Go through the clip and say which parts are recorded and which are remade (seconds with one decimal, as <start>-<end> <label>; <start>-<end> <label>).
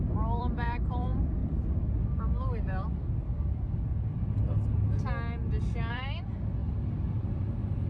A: 0.0-1.4 remade; 1.4-2.2 recorded; 2.2-3.9 remade; 3.9-5.9 recorded; 5.9-7.9 remade